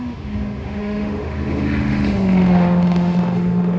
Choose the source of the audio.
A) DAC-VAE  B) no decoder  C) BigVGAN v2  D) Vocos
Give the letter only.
A